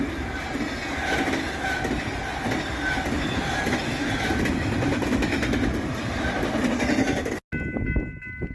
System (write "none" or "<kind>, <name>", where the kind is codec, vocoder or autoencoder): none